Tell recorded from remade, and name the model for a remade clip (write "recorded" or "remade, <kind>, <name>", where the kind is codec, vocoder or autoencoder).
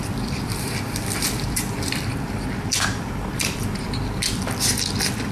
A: remade, vocoder, BigVGAN v2